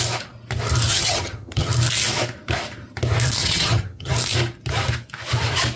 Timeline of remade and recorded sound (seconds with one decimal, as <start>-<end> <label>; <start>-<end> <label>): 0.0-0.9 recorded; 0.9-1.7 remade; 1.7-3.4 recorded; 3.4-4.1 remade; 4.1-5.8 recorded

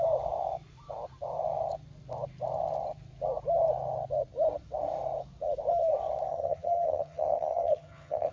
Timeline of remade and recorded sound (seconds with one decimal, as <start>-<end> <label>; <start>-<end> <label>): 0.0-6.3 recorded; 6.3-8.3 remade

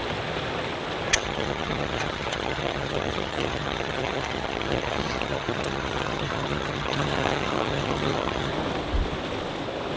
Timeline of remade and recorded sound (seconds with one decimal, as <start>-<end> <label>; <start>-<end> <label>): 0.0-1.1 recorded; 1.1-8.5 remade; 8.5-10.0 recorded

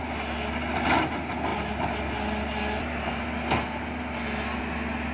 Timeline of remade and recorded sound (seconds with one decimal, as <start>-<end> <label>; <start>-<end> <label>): 0.0-5.1 recorded

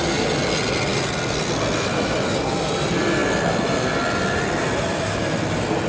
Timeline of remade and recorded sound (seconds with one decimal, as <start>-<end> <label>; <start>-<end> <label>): 0.0-5.9 recorded

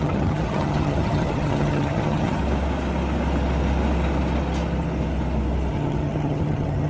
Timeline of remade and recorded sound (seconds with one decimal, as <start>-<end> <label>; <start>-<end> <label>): 0.0-2.4 remade; 2.4-5.7 recorded; 5.7-6.9 remade

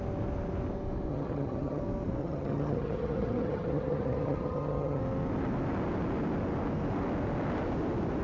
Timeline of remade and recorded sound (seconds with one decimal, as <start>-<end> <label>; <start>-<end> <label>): 0.0-1.1 recorded; 1.1-1.8 remade; 1.8-2.2 recorded; 2.2-5.0 remade; 5.0-8.2 recorded